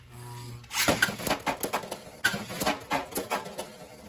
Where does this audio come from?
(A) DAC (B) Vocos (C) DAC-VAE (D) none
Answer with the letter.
D